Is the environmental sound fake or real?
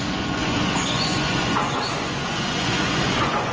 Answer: fake